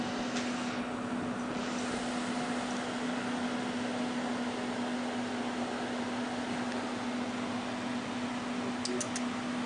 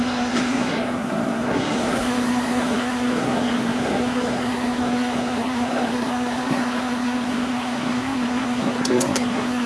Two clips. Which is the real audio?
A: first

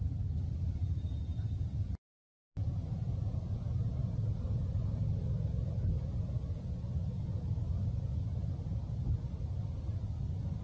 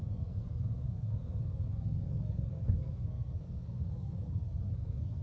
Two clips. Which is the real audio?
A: first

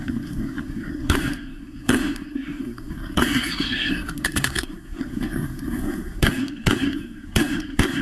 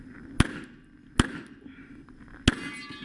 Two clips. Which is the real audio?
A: second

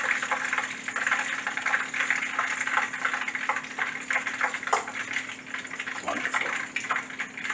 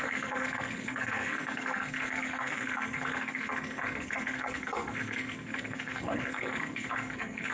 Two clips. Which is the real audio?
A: first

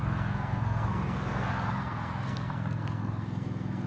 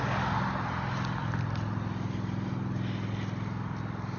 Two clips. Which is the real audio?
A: second